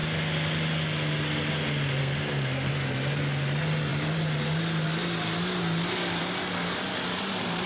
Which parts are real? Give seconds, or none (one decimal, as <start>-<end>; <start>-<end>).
0.0-2.0; 2.7-7.7